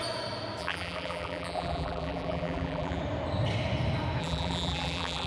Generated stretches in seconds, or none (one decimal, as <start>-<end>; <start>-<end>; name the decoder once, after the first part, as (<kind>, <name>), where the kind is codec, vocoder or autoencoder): 0.6-3.0 (vocoder, BigVGAN v2); 4.2-5.3

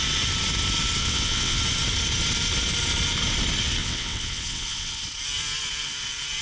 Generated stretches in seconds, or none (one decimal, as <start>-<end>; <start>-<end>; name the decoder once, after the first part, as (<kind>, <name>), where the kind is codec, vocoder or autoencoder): 1.0-1.6 (vocoder, WaveNeXt); 3.8-5.0

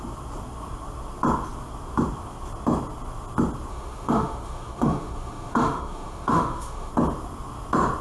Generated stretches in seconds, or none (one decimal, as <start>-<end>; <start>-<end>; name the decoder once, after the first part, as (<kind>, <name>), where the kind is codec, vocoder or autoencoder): 3.7-6.9 (autoencoder, DAC-VAE)

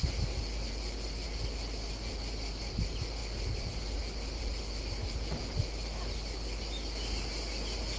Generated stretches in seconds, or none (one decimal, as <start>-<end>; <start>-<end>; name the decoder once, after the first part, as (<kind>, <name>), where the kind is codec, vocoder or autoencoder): none

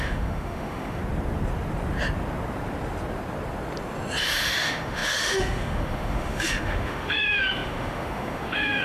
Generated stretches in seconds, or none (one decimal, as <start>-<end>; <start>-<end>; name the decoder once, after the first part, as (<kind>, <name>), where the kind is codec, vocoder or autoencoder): 0.0-1.0 (autoencoder, DAC-VAE); 4.2-8.8